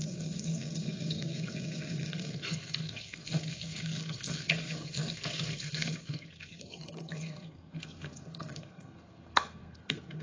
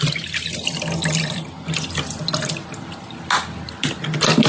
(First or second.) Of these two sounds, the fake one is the first